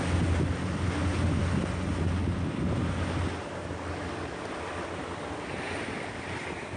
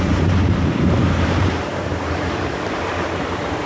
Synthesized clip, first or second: second